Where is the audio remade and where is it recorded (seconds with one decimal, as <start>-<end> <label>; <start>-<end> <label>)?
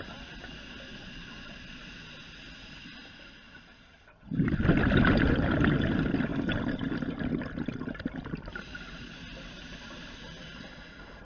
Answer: 0.0-0.9 recorded; 0.9-1.8 remade; 1.8-11.2 recorded